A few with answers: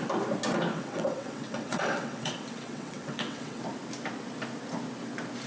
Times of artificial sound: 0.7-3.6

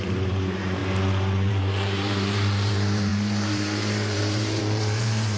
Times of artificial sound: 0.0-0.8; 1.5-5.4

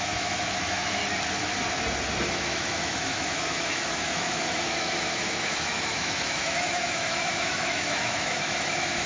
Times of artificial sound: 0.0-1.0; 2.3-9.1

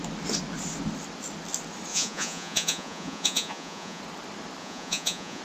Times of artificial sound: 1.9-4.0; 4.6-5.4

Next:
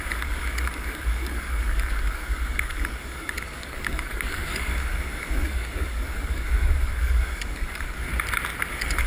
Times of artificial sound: 0.0-8.1; 8.7-9.1

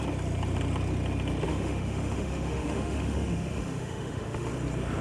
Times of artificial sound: 1.5-4.5